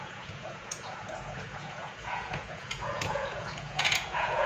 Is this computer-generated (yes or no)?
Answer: yes